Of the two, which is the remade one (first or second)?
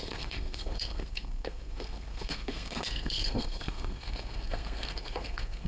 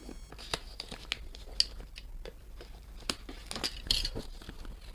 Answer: first